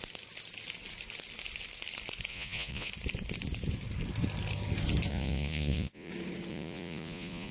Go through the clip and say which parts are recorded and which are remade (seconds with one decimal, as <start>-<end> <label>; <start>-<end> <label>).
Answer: 0.0-2.3 recorded; 2.3-2.9 remade; 2.9-5.1 recorded; 5.1-6.1 remade; 6.1-6.5 recorded; 6.5-7.5 remade